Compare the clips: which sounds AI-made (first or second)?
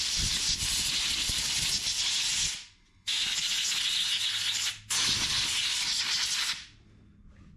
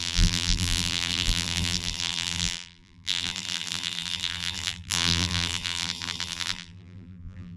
second